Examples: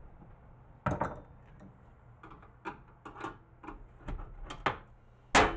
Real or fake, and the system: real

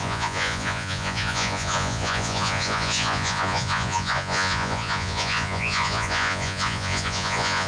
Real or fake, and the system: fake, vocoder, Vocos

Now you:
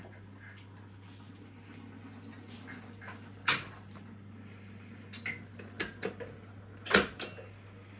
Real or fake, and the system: real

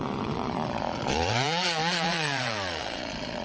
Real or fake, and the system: fake, vocoder, Vocos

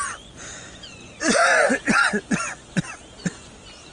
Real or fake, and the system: fake, vocoder, Vocos